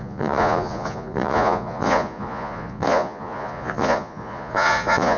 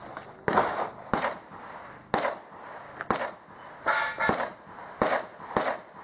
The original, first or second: second